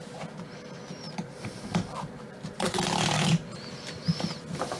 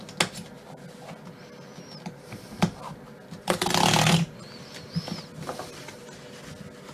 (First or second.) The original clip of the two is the second